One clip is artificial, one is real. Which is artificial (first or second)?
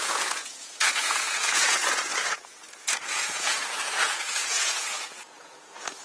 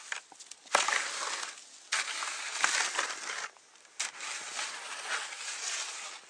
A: first